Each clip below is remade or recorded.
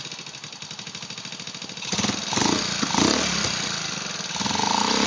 recorded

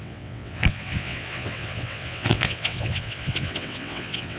remade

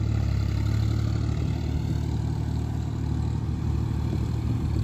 recorded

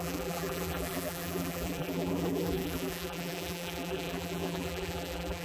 remade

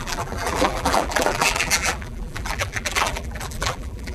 remade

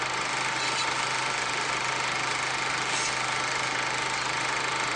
recorded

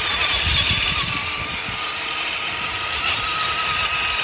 remade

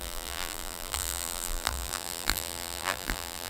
remade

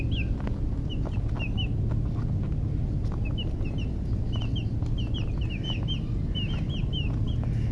recorded